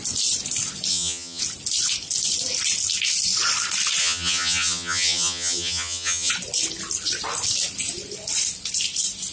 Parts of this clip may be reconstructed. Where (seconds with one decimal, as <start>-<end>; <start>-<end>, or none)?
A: 0.9-1.4; 4.0-6.3